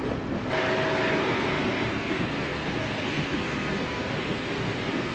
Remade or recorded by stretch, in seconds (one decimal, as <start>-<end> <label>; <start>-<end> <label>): 0.0-1.2 recorded; 1.2-5.1 remade